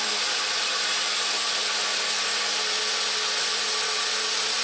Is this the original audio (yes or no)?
yes